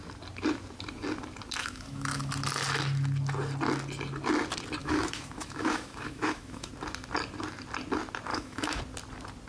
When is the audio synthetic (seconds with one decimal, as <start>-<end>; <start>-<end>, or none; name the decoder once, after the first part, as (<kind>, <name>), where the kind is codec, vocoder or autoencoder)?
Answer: 1.6-2.3 (autoencoder, DAC-VAE); 4.8-6.7; 8.3-8.8